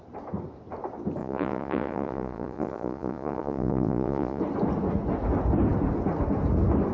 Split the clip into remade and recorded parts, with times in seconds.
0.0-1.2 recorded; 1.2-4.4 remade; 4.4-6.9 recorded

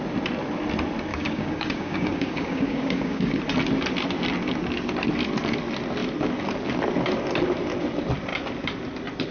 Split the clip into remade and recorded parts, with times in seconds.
0.0-1.1 recorded; 1.1-3.4 remade; 3.4-9.3 recorded

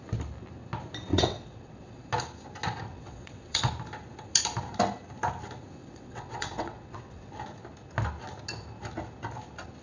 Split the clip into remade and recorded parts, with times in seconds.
0.0-1.1 recorded; 1.1-2.1 remade; 2.1-2.9 recorded; 2.9-3.7 remade; 3.7-5.8 recorded; 5.8-7.3 remade; 7.3-9.8 recorded

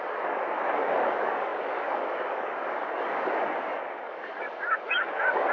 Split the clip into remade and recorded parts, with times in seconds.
0.0-5.5 remade